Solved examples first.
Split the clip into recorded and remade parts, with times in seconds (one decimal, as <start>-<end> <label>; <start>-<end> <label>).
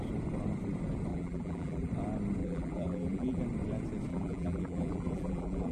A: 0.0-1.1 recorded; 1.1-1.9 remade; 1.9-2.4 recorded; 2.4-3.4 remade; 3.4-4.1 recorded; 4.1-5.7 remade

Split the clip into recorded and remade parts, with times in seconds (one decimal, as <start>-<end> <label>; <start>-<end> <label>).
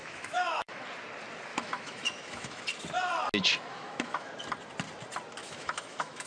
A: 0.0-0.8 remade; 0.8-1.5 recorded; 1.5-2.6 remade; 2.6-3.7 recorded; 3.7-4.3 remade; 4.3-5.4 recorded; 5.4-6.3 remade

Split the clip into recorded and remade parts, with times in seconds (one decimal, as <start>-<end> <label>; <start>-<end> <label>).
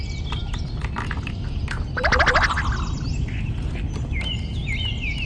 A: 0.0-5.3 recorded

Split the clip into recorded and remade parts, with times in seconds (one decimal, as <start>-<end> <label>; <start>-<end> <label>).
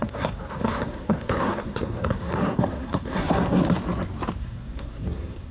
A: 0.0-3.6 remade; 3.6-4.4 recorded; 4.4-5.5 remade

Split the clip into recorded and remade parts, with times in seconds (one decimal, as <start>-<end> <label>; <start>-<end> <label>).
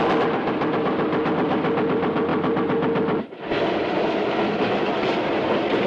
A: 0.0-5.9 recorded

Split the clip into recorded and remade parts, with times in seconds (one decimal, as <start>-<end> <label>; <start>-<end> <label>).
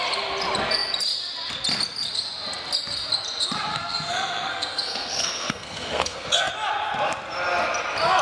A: 0.0-3.7 recorded; 3.7-6.5 remade; 6.5-8.2 recorded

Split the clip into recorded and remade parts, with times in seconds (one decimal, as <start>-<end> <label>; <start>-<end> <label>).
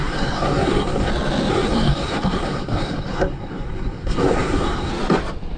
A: 0.0-1.1 remade; 1.1-1.5 recorded; 1.5-4.9 remade; 4.9-5.6 recorded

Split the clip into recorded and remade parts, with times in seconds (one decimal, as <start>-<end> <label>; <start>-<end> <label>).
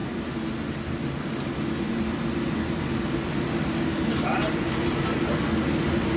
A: 0.0-6.2 recorded